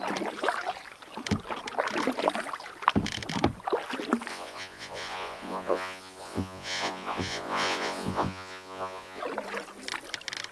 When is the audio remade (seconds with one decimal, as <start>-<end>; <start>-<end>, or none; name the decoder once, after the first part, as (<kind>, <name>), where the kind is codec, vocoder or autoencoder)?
4.3-9.2 (vocoder, Vocos)

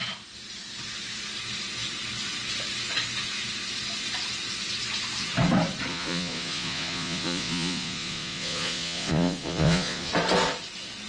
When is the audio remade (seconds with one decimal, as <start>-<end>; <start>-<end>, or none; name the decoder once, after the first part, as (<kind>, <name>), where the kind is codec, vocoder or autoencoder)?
5.9-10.1 (vocoder, Vocos)